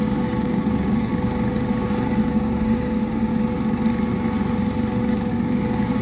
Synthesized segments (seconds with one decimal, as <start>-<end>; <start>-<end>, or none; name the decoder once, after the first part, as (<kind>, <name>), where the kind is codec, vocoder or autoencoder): 0.0-1.1 (codec, DAC); 2.3-3.3; 5.3-6.0